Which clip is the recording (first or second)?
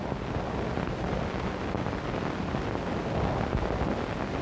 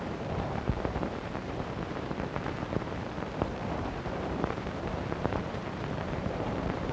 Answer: first